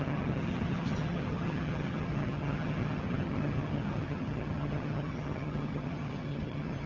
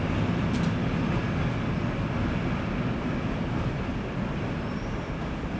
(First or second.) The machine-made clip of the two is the first